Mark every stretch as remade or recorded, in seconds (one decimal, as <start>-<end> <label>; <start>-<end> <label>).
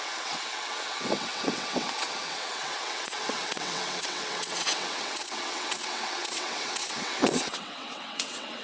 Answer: 0.0-8.6 remade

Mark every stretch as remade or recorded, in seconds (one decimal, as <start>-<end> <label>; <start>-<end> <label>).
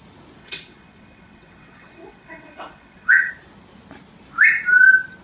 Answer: 0.0-0.4 recorded; 0.4-3.3 remade; 3.3-5.2 recorded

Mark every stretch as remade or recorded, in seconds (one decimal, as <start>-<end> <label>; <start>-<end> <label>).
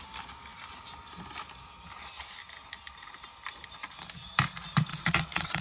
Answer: 0.0-4.9 recorded; 4.9-5.6 remade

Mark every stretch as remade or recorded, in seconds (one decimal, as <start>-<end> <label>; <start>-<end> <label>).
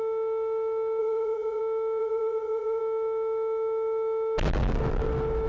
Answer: 0.0-1.0 recorded; 1.0-1.6 remade; 1.6-2.0 recorded; 2.0-2.8 remade; 2.8-5.5 recorded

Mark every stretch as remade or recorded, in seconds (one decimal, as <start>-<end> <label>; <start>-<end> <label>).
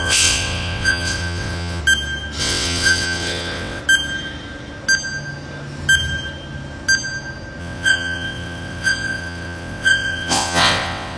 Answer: 0.0-1.8 remade; 1.8-2.4 recorded; 2.4-3.8 remade; 3.8-7.6 recorded; 7.6-11.2 remade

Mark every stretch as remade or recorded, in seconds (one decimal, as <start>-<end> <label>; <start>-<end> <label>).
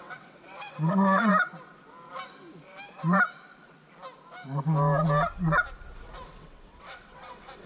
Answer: 0.0-1.3 remade; 1.3-5.9 recorded; 5.9-7.7 remade